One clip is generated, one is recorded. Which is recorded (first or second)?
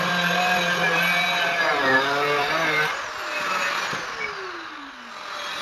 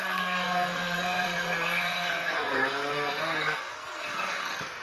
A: first